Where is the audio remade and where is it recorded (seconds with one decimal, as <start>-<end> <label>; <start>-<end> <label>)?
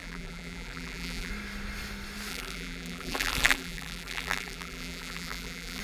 0.0-1.3 remade; 1.3-2.3 recorded; 2.3-5.8 remade